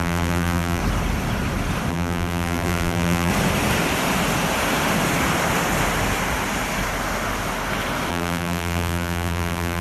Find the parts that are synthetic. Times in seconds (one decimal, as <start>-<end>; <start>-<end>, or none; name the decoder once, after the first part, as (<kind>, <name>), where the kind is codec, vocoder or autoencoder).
0.0-0.8 (vocoder, BigVGAN v2); 1.9-3.3; 8.1-9.8